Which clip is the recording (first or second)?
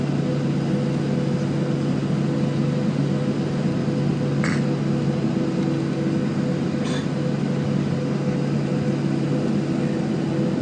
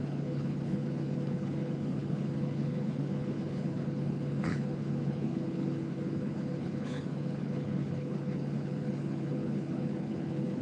first